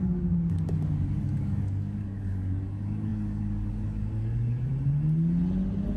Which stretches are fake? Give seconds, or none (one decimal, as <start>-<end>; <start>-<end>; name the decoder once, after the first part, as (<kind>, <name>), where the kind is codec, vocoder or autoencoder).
0.0-4.7 (codec, DAC)